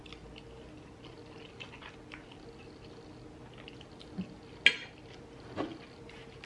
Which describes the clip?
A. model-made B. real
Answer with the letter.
B